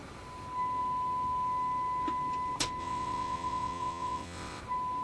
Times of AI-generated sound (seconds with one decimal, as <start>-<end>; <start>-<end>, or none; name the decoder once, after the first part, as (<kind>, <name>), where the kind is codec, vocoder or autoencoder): 2.8-4.6 (vocoder, WaveNeXt)